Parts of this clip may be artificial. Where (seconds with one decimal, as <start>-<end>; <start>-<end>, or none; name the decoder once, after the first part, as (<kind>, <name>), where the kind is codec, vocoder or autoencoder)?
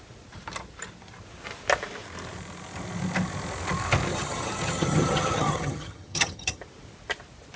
4.1-6.6 (vocoder, HiFi-GAN)